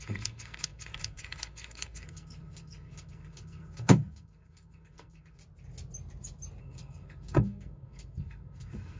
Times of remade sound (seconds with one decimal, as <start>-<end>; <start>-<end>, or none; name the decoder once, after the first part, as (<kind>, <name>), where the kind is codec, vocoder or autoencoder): 0.0-5.4 (codec, SNAC); 6.6-9.0